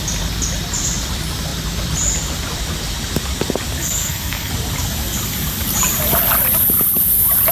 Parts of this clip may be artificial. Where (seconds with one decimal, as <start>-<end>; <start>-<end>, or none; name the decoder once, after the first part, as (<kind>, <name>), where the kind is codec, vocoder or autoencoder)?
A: 3.8-4.5 (codec, SNAC)